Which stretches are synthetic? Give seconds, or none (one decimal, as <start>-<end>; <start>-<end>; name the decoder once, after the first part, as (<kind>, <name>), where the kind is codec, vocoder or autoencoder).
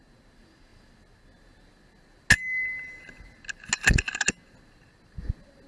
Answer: none